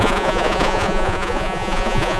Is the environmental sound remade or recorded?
remade